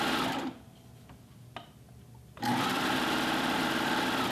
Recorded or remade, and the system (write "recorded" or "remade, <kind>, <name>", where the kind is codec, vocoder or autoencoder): recorded